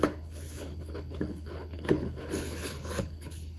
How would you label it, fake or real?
fake